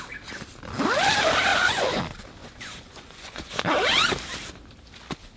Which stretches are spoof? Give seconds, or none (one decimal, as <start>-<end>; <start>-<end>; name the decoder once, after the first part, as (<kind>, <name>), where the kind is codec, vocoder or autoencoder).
1.5-2.0 (vocoder, Vocos); 2.4-3.5